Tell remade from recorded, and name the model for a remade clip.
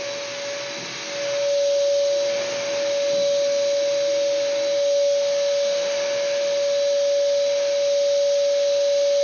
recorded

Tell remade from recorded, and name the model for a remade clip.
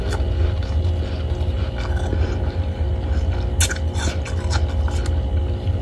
recorded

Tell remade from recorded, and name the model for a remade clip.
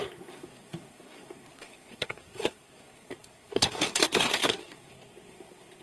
remade, codec, SNAC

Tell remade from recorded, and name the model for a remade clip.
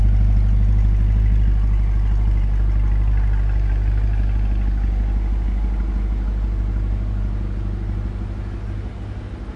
recorded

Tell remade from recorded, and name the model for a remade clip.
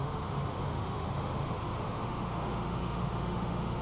remade, autoencoder, DAC-VAE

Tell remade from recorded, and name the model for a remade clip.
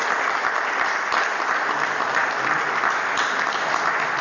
recorded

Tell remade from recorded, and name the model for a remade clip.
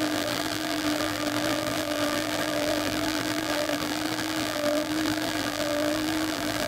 remade, vocoder, BigVGAN v2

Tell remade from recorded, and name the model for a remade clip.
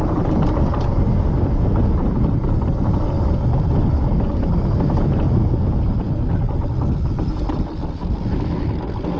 recorded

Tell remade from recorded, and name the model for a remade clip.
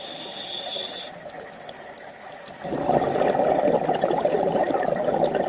recorded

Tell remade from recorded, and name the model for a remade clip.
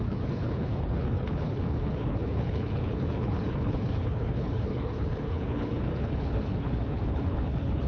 remade, codec, HILCodec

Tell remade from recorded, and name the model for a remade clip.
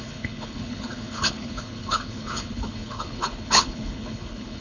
remade, codec, HILCodec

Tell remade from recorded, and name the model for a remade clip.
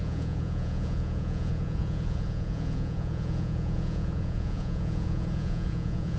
remade, vocoder, Vocos